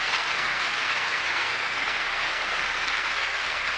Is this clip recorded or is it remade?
remade